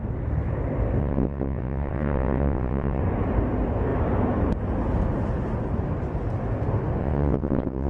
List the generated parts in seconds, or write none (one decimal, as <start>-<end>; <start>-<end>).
1.0-3.0; 7.0-7.9